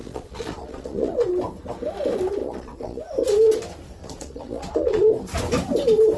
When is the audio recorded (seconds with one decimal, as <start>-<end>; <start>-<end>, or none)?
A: 1.3-2.4; 3.0-4.0; 5.1-6.2